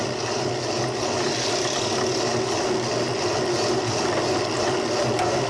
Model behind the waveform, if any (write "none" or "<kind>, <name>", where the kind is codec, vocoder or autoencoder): none